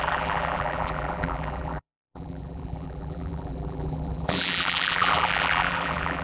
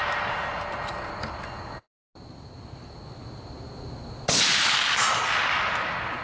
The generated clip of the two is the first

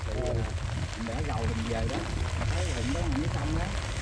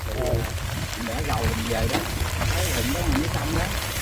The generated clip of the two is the second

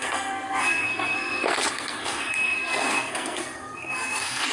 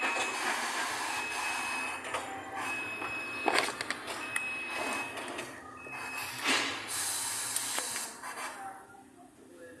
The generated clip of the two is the first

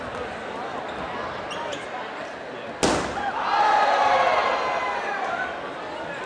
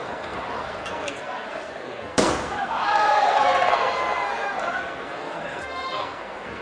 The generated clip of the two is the second